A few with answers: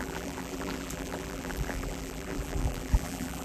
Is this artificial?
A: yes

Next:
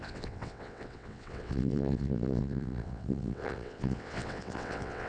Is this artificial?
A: yes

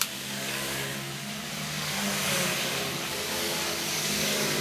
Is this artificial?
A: yes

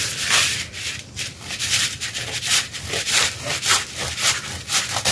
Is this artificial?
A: yes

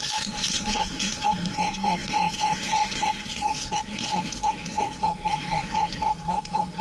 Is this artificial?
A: yes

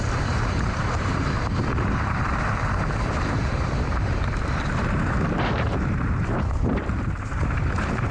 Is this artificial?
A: yes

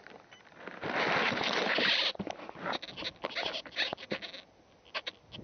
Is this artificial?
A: no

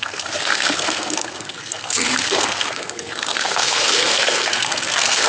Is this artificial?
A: yes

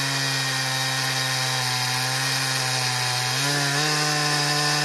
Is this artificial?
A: no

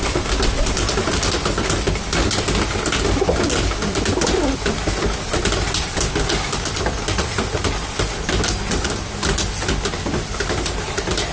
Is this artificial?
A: no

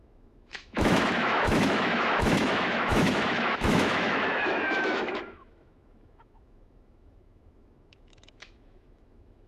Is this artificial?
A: yes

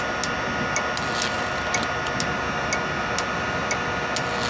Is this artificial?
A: no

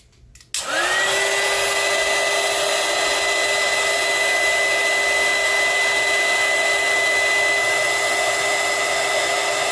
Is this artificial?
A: no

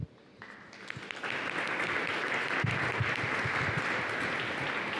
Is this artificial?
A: no